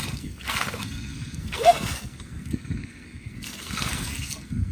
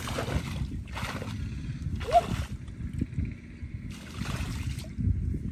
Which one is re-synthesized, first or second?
first